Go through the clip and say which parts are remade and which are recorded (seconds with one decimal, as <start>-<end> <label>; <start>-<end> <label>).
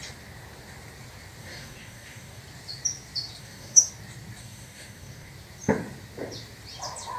0.0-1.4 recorded; 1.4-2.4 remade; 2.4-3.4 recorded; 3.4-3.9 remade; 3.9-4.4 recorded; 4.4-5.3 remade; 5.3-7.2 recorded